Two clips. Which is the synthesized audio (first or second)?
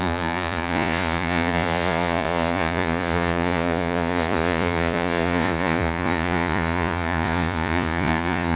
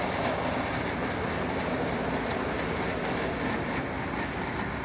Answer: first